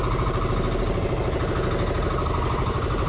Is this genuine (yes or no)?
yes